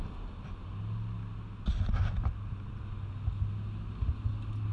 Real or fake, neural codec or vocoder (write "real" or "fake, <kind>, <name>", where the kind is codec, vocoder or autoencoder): real